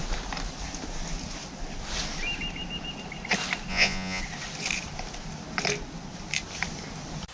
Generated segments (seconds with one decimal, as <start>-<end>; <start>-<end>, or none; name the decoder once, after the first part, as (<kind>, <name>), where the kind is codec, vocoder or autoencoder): 3.7-4.2 (vocoder, Vocos)